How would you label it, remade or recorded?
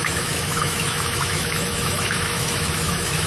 remade